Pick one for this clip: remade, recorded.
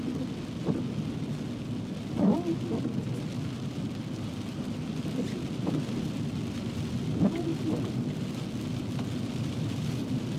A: recorded